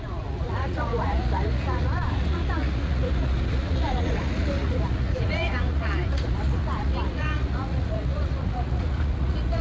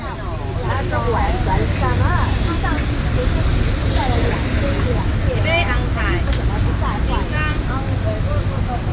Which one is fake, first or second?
first